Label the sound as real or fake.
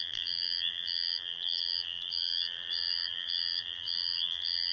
fake